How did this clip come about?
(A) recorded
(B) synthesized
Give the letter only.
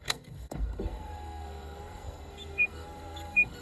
B